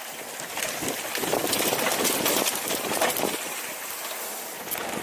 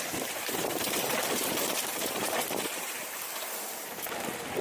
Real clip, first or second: first